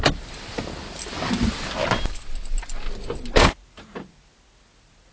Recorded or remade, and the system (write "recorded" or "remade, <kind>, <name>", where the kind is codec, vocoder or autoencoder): recorded